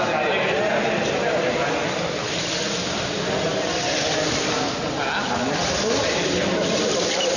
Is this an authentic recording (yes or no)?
yes